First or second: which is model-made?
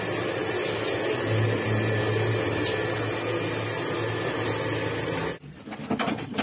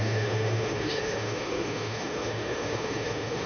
second